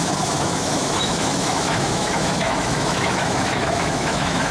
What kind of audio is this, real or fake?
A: fake